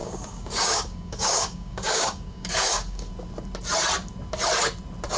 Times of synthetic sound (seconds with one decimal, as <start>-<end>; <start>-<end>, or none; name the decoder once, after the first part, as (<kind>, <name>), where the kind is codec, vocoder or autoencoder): 0.0-3.1 (codec, DAC)